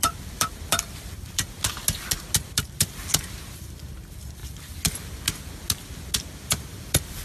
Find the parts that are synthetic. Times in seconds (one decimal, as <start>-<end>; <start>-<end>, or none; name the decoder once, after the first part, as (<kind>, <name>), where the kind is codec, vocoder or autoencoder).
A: 0.0-0.5 (vocoder, BigVGAN v2); 3.5-4.4; 6.5-7.2